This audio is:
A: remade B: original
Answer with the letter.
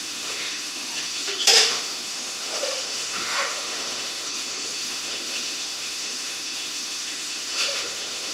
A